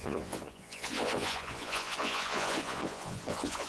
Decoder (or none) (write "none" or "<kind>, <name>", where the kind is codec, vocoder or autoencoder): vocoder, Vocos